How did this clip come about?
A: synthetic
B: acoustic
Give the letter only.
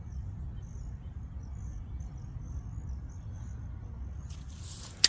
B